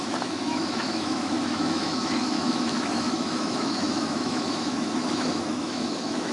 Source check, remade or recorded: remade